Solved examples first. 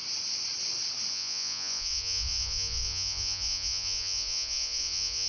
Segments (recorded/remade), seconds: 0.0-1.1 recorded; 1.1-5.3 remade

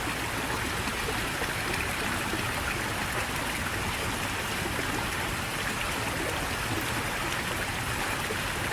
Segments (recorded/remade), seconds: 0.0-8.7 recorded

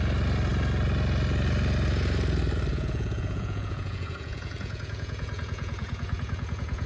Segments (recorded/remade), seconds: 0.0-2.7 recorded; 2.7-6.9 remade